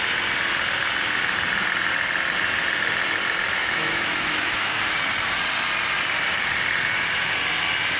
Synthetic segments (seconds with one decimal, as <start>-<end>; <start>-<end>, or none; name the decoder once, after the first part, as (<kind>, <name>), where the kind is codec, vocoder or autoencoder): 3.6-4.8 (autoencoder, DAC-VAE)